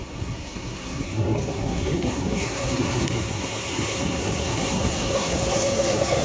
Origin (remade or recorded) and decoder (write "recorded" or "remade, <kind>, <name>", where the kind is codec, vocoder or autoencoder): remade, codec, SNAC